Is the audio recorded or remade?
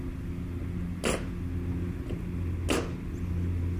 recorded